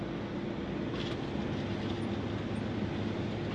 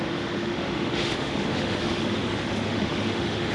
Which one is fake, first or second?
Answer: second